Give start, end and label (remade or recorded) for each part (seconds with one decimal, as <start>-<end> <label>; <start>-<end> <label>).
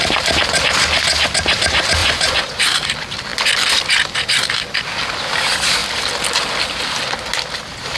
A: 0.0-2.0 recorded; 2.0-2.6 remade; 2.6-8.0 recorded